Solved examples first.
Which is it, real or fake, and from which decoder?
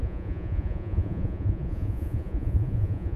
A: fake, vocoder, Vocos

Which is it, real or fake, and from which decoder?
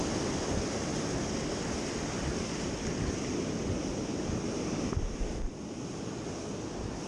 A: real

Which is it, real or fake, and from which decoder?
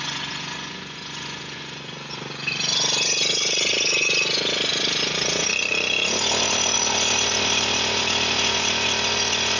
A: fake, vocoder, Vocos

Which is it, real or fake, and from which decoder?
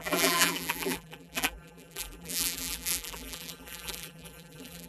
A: fake, vocoder, BigVGAN v2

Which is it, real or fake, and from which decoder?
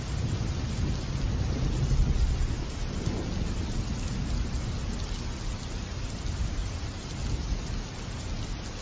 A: real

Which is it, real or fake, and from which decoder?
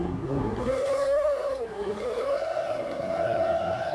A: fake, codec, SNAC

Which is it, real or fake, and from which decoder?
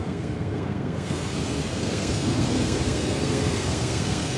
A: fake, codec, SNAC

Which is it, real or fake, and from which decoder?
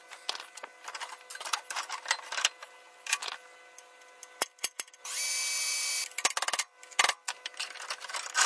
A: real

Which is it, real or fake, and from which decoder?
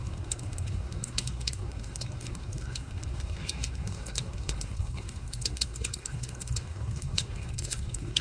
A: fake, codec, SNAC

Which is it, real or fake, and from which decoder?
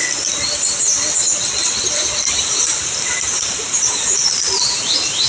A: real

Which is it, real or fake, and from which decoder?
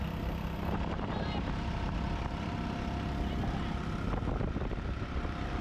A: real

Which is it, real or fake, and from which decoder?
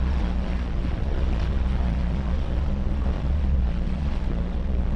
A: fake, vocoder, Vocos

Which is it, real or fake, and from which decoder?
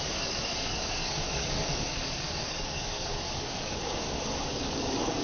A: fake, codec, DAC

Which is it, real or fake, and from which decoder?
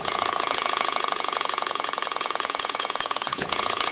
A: fake, vocoder, Vocos